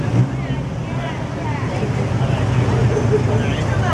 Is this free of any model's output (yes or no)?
yes